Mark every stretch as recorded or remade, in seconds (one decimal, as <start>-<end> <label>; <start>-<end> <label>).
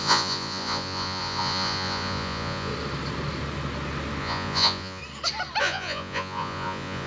0.0-2.7 remade; 2.7-4.2 recorded; 4.2-5.0 remade; 5.0-5.6 recorded; 5.6-7.1 remade